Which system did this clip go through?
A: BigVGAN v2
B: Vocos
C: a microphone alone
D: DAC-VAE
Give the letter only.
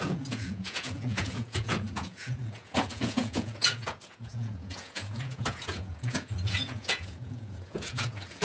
B